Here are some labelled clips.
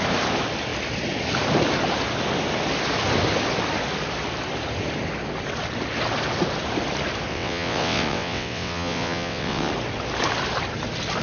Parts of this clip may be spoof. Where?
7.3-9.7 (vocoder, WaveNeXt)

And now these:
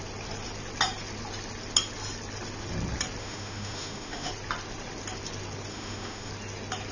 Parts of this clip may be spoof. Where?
3.2-4.3 (autoencoder, DAC-VAE); 5.7-6.3

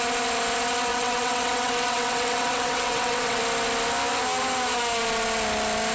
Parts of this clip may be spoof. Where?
0.9-3.4 (vocoder, WaveNeXt)

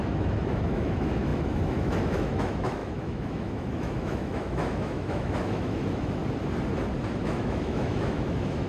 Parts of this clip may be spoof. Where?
0.0-6.2 (autoencoder, DAC-VAE); 7.2-8.7

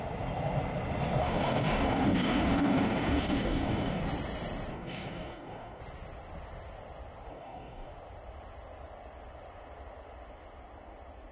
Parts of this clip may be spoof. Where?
1.2-4.0 (codec, DAC); 4.7-5.8; 7.3-7.9

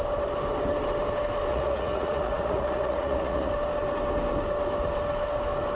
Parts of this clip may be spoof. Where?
1.5-3.5 (vocoder, Vocos)

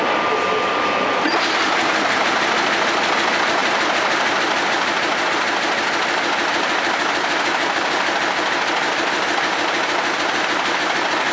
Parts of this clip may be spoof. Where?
none

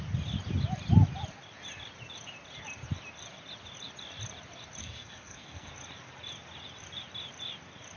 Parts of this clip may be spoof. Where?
4.8-5.7 (codec, SNAC)